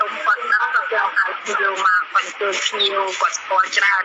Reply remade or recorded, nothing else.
remade